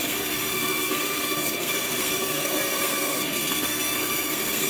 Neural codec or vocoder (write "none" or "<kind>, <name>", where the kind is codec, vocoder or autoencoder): codec, SNAC